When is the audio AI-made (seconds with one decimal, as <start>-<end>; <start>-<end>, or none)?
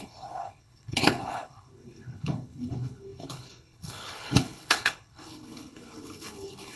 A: 0.0-6.8